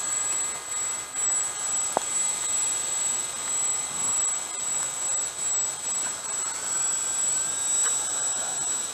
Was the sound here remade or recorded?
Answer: recorded